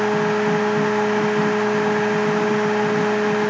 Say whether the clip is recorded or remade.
recorded